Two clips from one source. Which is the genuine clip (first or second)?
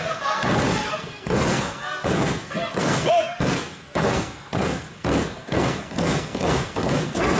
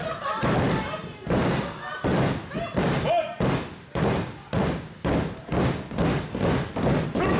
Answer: second